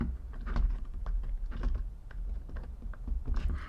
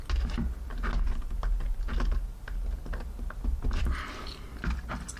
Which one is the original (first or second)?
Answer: second